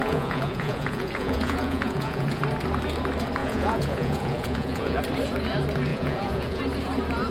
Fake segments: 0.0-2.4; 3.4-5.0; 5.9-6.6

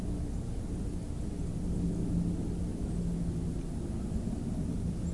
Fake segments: none

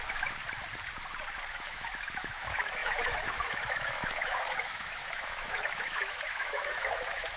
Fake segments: 0.0-0.4; 1.5-7.4

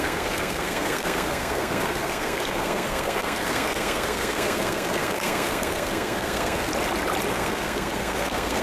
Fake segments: 0.0-6.7; 7.3-8.6

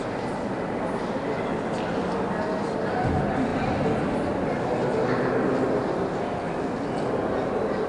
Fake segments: none

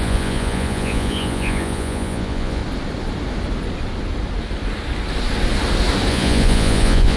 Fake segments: 0.0-2.6; 6.1-7.2

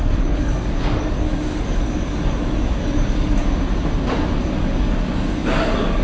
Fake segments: 0.0-3.4; 4.4-6.0

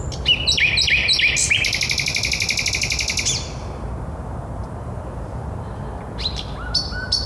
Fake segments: 3.6-5.7